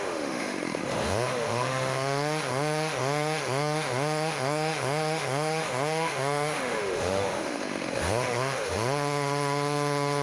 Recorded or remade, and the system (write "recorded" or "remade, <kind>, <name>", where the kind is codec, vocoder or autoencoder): remade, autoencoder, DAC-VAE